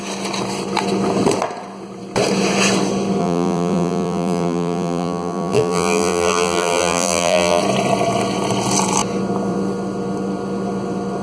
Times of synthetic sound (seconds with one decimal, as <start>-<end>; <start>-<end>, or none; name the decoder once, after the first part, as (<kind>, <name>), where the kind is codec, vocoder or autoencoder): 3.2-7.6 (vocoder, BigVGAN v2)